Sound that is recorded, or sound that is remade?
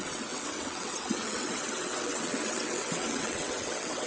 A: remade